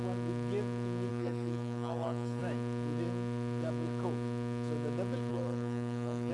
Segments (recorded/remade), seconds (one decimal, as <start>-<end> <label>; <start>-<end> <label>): 0.0-1.1 recorded; 1.1-2.4 remade; 2.4-5.3 recorded; 5.3-6.3 remade